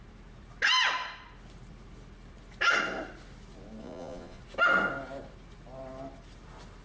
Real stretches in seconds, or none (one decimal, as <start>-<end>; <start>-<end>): 0.0-3.8; 4.4-6.8